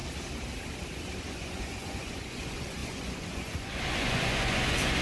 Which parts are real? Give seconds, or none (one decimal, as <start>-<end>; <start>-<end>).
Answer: 0.0-1.2